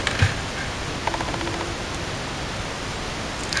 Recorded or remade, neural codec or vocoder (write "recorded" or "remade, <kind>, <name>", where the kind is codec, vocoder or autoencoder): recorded